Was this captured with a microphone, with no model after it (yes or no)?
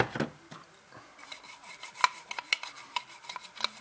yes